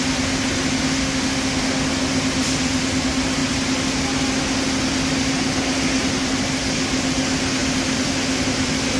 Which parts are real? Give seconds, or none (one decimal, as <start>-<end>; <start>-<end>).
0.0-1.0; 1.8-9.0

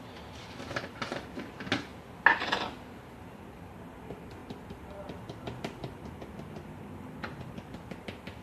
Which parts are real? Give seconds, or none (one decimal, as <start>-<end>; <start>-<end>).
0.0-4.4

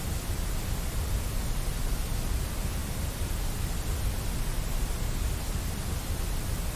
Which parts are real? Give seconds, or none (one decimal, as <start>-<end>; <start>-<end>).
0.0-6.8

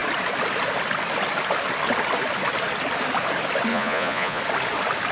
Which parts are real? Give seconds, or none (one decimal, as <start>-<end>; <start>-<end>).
0.0-3.7; 4.4-5.1

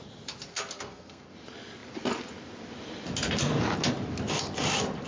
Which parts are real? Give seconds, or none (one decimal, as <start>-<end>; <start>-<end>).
0.0-0.5; 1.3-5.1

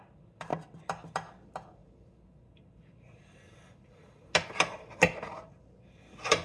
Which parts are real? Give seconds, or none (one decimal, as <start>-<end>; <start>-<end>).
0.0-6.4

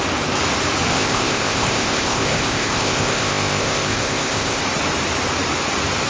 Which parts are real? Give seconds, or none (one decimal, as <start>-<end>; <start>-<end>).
0.0-0.9; 4.6-6.1